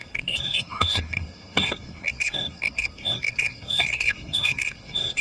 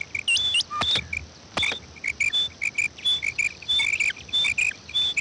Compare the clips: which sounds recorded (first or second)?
second